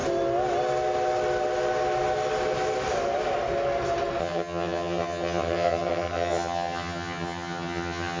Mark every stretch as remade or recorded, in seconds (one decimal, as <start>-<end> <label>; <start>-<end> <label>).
0.0-4.2 recorded; 4.2-8.2 remade